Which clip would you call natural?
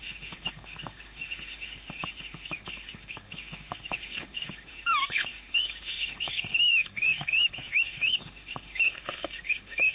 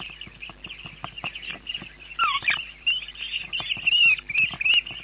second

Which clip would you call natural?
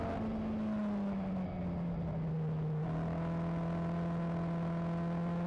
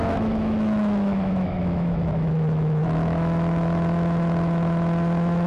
first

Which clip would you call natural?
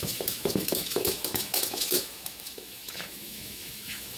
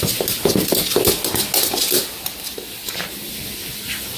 second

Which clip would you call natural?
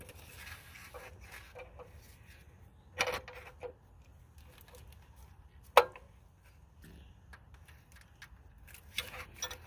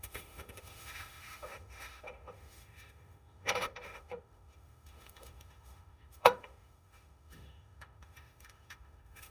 first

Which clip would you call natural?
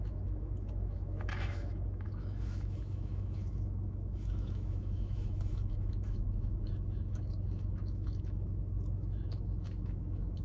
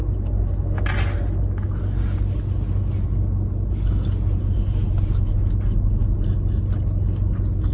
second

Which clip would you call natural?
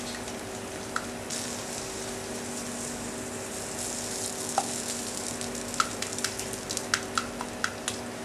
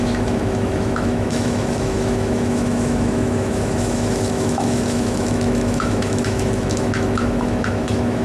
first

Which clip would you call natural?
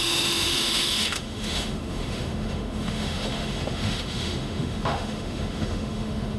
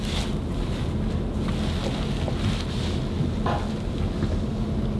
second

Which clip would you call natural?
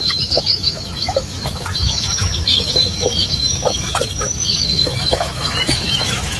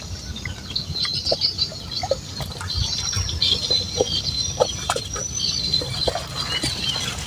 second